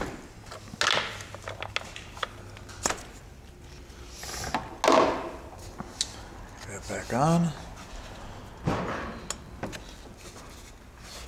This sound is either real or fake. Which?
real